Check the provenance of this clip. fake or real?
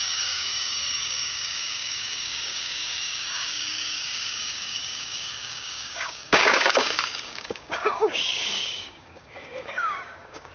fake